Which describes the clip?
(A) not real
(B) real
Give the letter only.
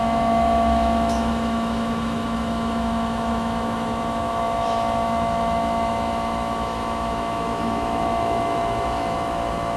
A